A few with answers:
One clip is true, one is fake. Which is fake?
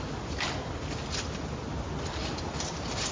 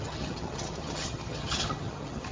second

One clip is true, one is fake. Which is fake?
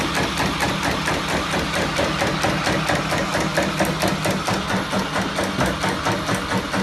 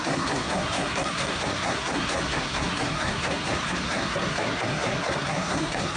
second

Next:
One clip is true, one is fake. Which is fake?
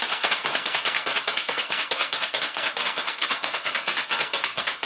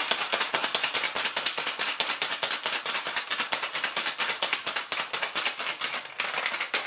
first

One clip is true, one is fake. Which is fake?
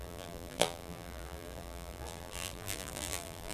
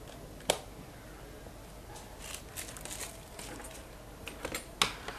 first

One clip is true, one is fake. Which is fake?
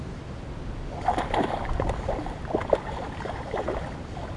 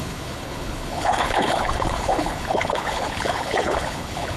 second